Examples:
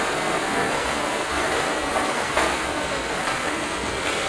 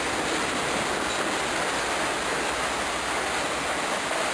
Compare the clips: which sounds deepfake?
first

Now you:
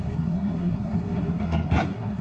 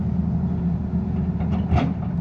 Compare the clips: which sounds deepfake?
first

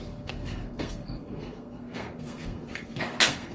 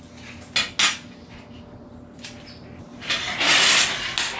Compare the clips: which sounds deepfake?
first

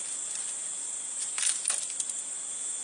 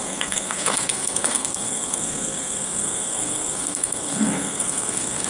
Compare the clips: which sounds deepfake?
second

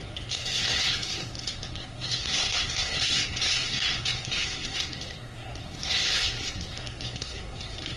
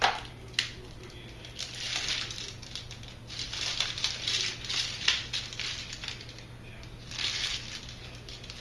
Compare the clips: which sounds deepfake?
first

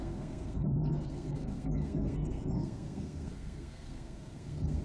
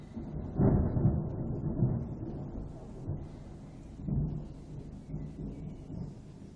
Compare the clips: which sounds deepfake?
first